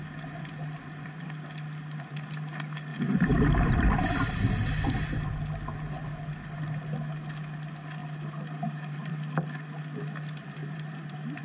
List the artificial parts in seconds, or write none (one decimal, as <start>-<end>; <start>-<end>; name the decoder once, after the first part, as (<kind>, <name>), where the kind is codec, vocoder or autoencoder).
2.9-4.4 (vocoder, BigVGAN v2); 8.0-9.1; 10.6-11.4